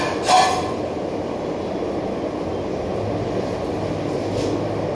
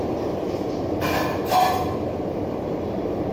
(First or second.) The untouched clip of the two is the first